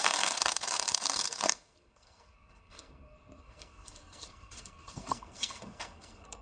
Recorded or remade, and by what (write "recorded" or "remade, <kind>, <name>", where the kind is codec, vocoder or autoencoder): remade, codec, SNAC